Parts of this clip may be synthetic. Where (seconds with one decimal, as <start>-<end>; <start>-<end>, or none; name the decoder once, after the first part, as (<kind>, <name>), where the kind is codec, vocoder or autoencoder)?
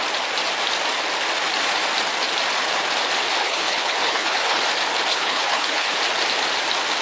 3.4-4.6 (codec, HILCodec); 5.1-5.9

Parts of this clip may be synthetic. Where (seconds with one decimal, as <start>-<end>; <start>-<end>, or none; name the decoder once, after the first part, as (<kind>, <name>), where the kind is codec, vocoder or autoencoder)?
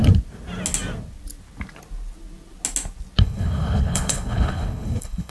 3.2-5.3 (codec, HILCodec)